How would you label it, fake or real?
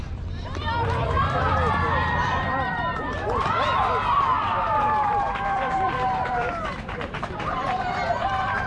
fake